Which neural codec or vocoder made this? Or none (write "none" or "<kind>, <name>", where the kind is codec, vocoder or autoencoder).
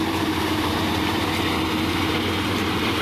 vocoder, BigVGAN v2